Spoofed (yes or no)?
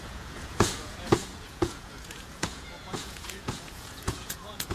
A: yes